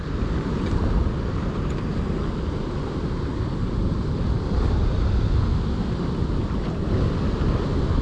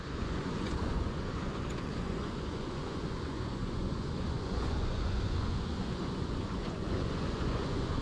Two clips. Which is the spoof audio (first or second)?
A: second